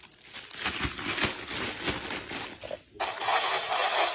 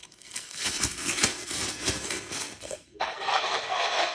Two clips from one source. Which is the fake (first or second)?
second